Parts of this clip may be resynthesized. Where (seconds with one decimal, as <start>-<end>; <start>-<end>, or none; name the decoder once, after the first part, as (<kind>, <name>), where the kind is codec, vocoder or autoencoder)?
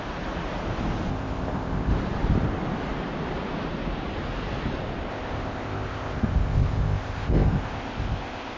1.1-1.9 (codec, ZipCodec); 5.1-8.6